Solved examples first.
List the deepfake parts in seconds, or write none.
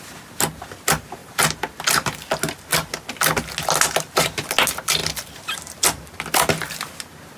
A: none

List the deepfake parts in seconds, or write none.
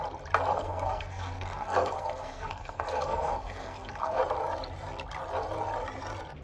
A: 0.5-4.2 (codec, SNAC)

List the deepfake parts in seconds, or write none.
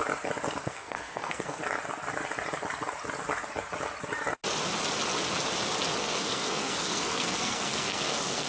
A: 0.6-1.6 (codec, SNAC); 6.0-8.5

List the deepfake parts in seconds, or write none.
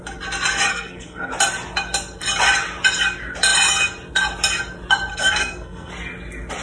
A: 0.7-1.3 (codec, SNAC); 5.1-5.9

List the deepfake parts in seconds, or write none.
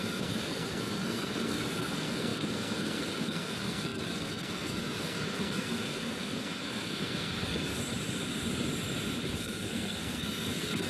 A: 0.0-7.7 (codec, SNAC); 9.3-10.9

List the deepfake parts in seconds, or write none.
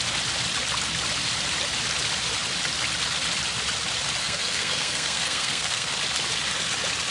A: 4.2-5.9 (codec, SNAC)